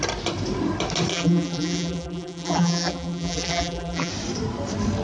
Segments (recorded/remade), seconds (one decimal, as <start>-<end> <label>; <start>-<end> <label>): 0.0-1.1 recorded; 1.1-4.1 remade; 4.1-5.0 recorded